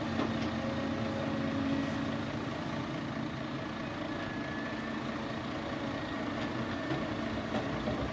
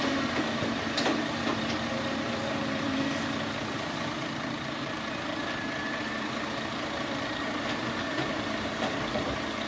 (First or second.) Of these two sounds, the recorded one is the first